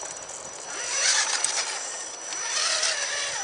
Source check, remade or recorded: recorded